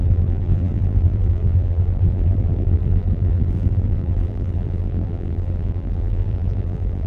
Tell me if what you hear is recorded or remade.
remade